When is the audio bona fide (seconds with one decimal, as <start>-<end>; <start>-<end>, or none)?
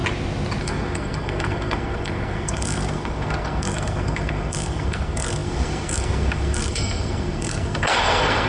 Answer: 0.0-0.6